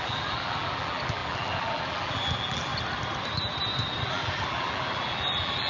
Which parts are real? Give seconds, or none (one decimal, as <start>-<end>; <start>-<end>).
2.7-4.1